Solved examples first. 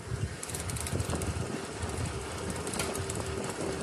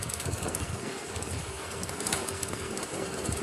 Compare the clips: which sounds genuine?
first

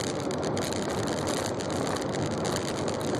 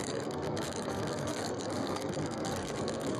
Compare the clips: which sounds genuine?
first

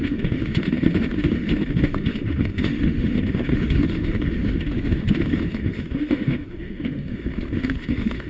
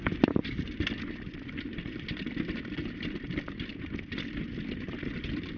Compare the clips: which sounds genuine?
second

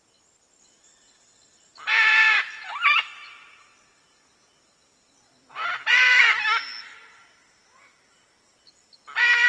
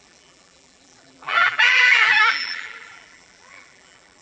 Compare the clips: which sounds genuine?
first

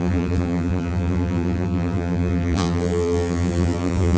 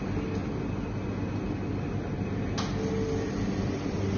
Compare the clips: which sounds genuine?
second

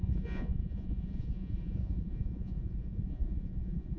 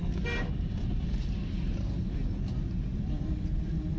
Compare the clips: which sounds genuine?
second